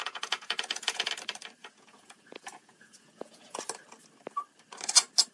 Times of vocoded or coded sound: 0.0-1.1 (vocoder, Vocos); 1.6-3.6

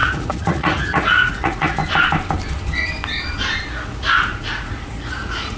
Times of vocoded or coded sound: 0.0-1.8 (vocoder, Vocos); 3.7-5.6

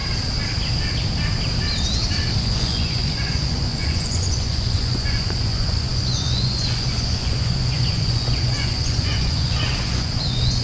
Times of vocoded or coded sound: 2.4-10.6 (vocoder, Vocos)

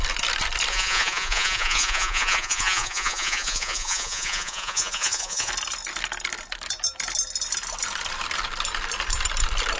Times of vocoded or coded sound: 0.7-5.5 (vocoder, Vocos)